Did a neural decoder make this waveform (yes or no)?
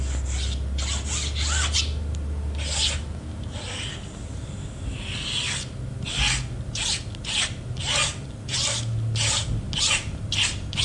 no